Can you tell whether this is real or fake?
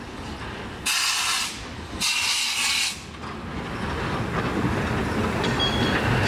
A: real